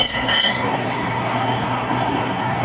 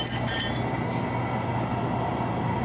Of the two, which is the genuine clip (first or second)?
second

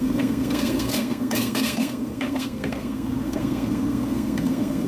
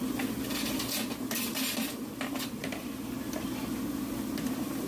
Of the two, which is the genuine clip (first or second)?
second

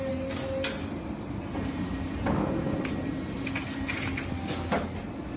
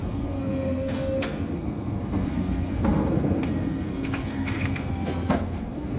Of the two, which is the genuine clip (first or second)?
first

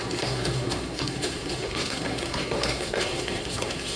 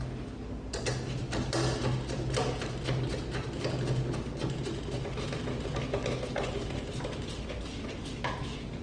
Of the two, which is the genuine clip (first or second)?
second